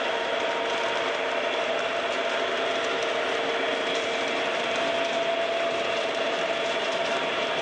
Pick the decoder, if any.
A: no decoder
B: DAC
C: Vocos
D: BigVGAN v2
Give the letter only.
A